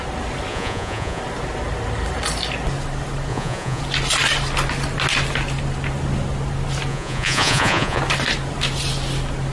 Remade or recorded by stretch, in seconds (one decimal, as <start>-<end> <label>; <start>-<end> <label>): 0.0-0.5 recorded; 0.5-1.2 remade; 1.2-3.3 recorded; 3.3-3.8 remade; 3.8-6.9 recorded; 6.9-8.0 remade; 8.0-9.5 recorded